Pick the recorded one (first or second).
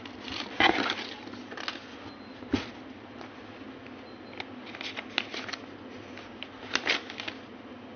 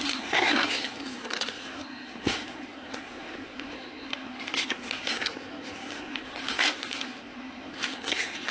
first